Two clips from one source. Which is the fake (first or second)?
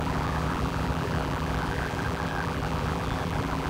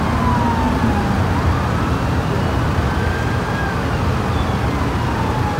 first